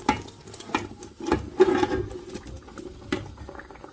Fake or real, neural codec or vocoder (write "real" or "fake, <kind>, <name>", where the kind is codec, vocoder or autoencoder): real